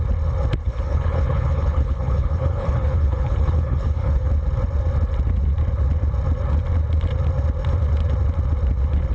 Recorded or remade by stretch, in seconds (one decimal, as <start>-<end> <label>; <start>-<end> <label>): 0.0-0.6 recorded; 0.6-4.3 remade; 4.3-9.1 recorded